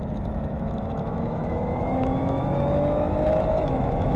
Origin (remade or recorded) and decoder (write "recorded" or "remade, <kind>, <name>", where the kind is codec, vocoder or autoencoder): remade, autoencoder, DAC-VAE